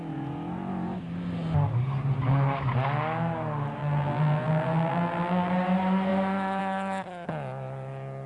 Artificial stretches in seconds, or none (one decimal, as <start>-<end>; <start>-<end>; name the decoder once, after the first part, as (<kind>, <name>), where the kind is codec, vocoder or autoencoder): 3.8-5.5 (vocoder, BigVGAN v2)